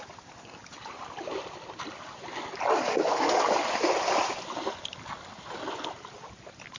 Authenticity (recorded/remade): recorded